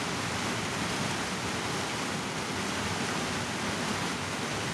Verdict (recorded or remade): recorded